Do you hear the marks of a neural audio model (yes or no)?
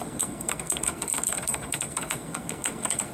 yes